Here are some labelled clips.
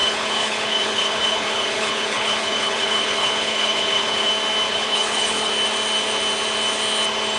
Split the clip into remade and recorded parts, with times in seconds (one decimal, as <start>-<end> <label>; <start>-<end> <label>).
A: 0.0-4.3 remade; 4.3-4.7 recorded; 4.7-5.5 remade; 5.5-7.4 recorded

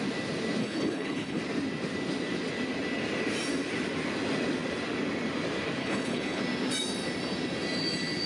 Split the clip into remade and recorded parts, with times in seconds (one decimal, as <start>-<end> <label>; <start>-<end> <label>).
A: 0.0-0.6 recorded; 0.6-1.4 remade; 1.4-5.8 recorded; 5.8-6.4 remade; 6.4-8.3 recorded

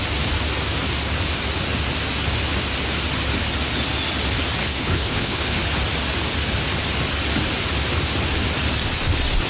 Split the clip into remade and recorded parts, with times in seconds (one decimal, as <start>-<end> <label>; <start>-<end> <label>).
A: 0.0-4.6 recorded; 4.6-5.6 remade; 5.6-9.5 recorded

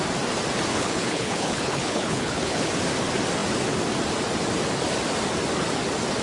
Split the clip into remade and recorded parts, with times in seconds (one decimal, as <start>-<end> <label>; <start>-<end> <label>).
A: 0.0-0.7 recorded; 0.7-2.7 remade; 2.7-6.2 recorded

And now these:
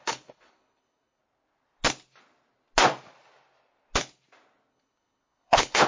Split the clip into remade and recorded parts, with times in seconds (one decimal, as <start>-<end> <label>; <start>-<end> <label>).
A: 0.0-1.2 remade; 1.2-4.7 recorded; 4.7-5.9 remade

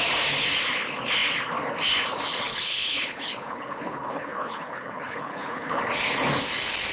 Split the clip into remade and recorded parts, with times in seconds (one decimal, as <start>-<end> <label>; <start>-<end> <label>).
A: 0.0-2.5 recorded; 2.5-5.8 remade; 5.8-6.9 recorded

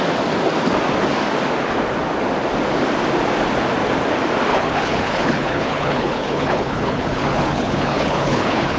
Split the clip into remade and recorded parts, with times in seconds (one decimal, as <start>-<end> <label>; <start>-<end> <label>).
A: 0.0-4.5 recorded; 4.5-8.8 remade